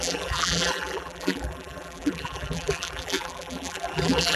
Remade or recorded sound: remade